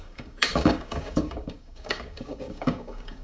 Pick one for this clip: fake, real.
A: fake